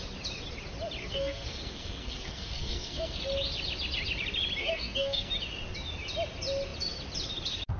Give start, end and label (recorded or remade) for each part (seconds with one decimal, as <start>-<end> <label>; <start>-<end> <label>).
0.0-1.0 recorded; 1.0-3.2 remade; 3.2-4.6 recorded; 4.6-5.3 remade; 5.3-7.8 recorded